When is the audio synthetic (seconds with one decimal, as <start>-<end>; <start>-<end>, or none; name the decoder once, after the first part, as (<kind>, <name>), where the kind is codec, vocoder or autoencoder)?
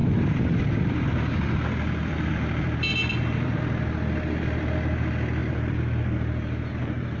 0.0-0.8 (vocoder, BigVGAN v2); 2.0-3.6; 5.4-6.0